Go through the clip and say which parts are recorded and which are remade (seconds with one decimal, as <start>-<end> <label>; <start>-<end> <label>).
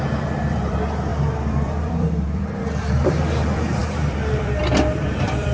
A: 0.0-5.5 remade